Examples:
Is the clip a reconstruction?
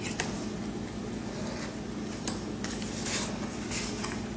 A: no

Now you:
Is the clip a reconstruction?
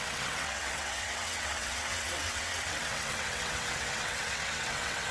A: yes